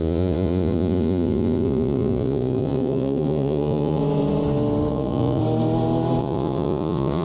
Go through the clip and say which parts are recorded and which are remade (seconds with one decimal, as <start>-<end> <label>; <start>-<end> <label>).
0.0-4.0 remade; 4.0-4.9 recorded; 4.9-5.4 remade; 5.4-6.2 recorded; 6.2-7.2 remade